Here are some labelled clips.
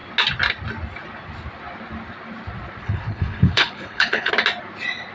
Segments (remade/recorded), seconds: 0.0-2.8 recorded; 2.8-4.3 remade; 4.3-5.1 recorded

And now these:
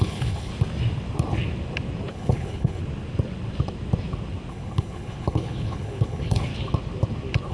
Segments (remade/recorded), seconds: 0.0-0.5 remade; 0.5-2.1 recorded; 2.1-2.8 remade; 2.8-4.5 recorded; 4.5-6.5 remade; 6.5-7.5 recorded

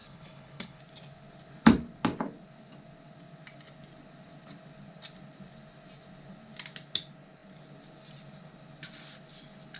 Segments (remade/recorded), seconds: 0.0-0.8 remade; 0.8-9.8 recorded

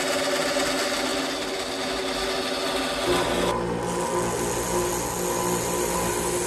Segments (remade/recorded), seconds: 0.0-6.5 recorded